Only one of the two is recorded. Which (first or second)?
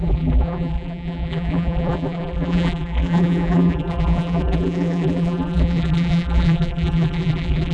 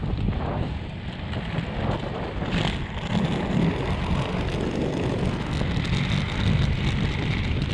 second